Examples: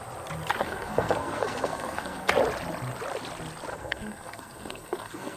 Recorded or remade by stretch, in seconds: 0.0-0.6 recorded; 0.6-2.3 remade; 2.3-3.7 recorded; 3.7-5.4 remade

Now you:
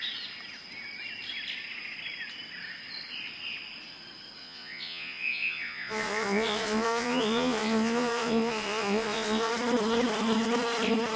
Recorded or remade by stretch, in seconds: 0.0-4.4 recorded; 4.4-9.5 remade; 9.5-11.2 recorded

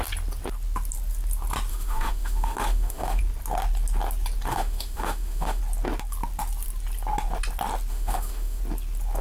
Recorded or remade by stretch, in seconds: 0.0-1.7 recorded; 1.7-3.2 remade; 3.2-4.5 recorded; 4.5-5.6 remade; 5.6-7.9 recorded; 7.9-8.6 remade; 8.6-9.2 recorded

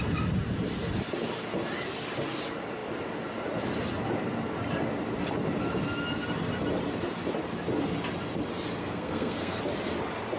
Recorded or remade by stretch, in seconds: 0.0-8.8 recorded; 8.8-9.6 remade; 9.6-10.4 recorded

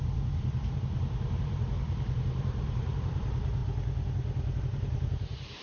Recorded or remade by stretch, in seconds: 0.0-3.6 remade; 3.6-4.6 recorded; 4.6-5.6 remade

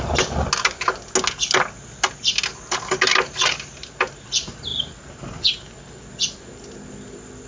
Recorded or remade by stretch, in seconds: 0.0-7.5 recorded

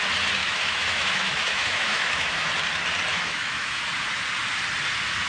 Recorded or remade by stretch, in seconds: 0.0-0.4 recorded; 0.4-2.5 remade; 2.5-3.1 recorded; 3.1-3.8 remade; 3.8-5.3 recorded

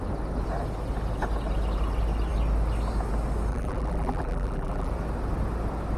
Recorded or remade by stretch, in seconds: 0.0-3.5 recorded; 3.5-4.9 remade; 4.9-6.0 recorded